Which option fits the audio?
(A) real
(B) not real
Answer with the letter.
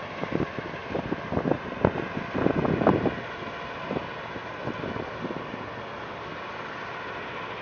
A